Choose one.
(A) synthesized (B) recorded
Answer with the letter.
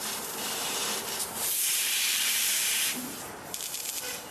A